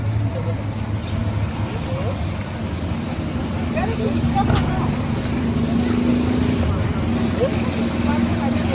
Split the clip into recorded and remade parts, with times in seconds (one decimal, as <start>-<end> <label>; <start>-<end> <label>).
0.0-8.7 recorded